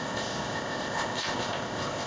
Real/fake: fake